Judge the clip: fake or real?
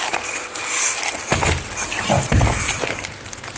real